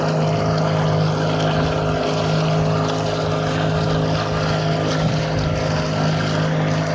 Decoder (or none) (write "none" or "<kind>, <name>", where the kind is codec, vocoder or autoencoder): none